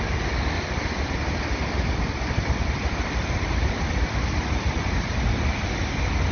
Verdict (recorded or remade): recorded